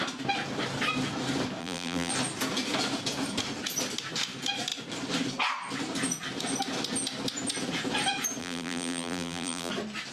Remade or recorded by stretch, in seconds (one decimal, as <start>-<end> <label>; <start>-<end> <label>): 0.0-1.6 recorded; 1.6-2.1 remade; 2.1-8.4 recorded; 8.4-9.7 remade; 9.7-10.1 recorded